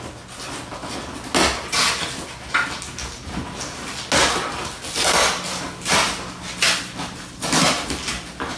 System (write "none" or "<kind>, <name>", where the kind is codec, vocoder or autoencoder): none